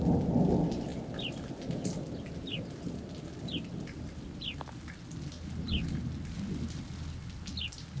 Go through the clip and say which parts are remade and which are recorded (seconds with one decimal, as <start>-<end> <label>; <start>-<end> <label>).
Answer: 0.0-8.0 recorded